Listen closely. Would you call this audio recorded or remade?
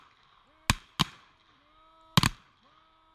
recorded